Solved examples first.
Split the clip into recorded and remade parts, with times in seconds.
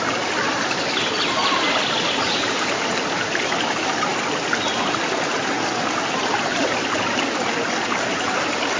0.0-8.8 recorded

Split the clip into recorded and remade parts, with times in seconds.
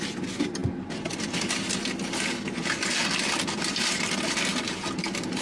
0.0-5.4 recorded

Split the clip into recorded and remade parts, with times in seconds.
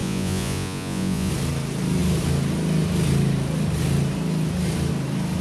0.0-1.3 remade; 1.3-5.4 recorded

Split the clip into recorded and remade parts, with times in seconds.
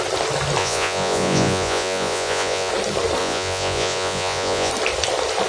0.0-0.6 recorded; 0.6-2.7 remade; 2.7-3.2 recorded; 3.2-4.7 remade; 4.7-5.5 recorded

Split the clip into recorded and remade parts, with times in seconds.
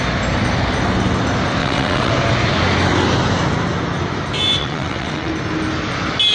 0.0-1.6 recorded; 1.6-2.1 remade; 2.1-4.6 recorded; 4.6-5.3 remade; 5.3-6.3 recorded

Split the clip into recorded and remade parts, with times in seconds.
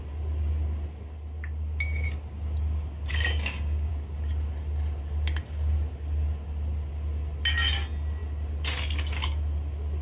0.0-3.1 recorded; 3.1-3.9 remade; 3.9-10.0 recorded